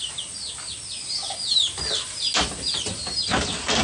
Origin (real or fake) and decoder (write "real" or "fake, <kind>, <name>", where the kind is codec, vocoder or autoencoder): real